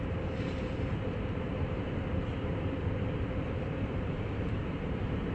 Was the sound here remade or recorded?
remade